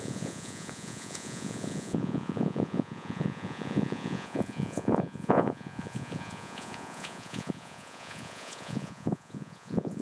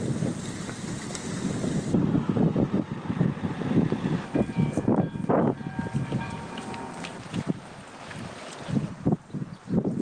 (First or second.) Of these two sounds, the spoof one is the first